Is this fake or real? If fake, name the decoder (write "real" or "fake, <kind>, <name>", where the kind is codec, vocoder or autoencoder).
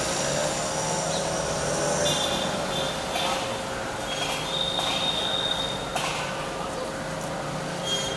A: real